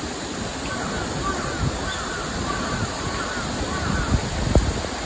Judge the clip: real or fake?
real